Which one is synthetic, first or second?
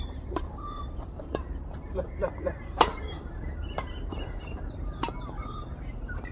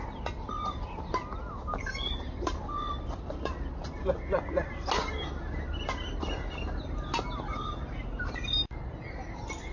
first